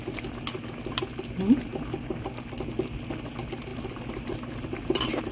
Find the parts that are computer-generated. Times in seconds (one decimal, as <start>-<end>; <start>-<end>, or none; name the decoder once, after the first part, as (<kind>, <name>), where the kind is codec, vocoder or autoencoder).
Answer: none